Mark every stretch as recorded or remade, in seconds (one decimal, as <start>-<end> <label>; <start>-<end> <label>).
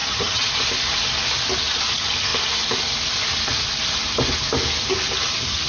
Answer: 0.0-0.5 remade; 0.5-5.7 recorded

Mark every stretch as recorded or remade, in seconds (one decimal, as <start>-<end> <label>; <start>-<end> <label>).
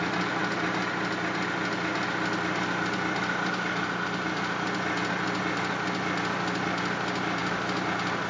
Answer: 0.0-8.3 recorded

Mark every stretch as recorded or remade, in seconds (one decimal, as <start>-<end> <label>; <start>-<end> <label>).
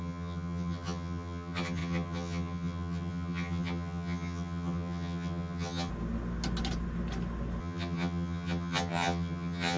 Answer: 0.0-5.9 remade; 5.9-7.6 recorded; 7.6-9.8 remade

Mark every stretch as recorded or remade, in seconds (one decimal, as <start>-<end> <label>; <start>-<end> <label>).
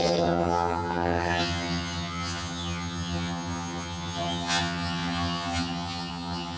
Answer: 0.0-6.6 remade